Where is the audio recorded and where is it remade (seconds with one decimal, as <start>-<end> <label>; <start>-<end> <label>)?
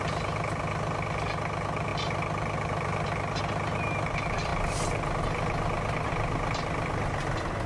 0.0-7.7 recorded